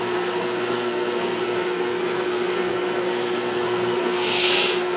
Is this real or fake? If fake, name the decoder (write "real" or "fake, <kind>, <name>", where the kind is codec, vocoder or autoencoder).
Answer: fake, codec, SNAC